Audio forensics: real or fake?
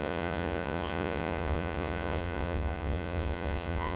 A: fake